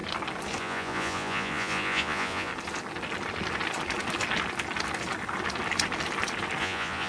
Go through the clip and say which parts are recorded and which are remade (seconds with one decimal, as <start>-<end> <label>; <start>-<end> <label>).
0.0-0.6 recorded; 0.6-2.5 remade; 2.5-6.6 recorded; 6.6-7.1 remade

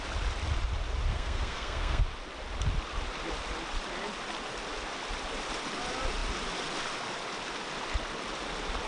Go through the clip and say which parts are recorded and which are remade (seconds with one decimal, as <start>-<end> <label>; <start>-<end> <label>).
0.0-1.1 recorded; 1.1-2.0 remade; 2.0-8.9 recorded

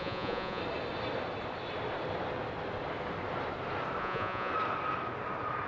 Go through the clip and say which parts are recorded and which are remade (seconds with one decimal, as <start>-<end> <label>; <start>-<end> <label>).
0.0-0.6 remade; 0.6-4.0 recorded; 4.0-4.5 remade; 4.5-5.7 recorded